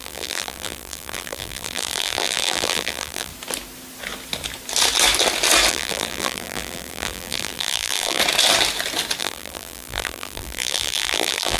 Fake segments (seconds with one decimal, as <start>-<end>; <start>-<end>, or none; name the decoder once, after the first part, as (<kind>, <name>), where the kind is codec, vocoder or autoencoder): 0.0-3.3 (vocoder, BigVGAN v2); 5.7-8.2; 9.2-11.6